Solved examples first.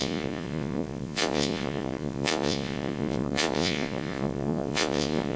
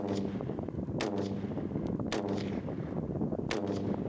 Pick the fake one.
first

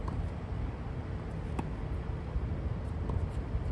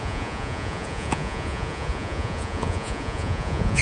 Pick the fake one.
second